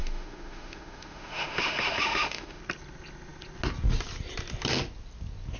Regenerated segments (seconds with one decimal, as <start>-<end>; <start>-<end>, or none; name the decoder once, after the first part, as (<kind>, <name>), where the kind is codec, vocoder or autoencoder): 0.0-2.6 (autoencoder, DAC-VAE)